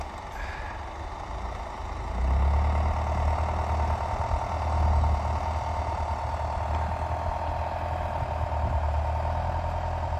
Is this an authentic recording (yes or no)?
yes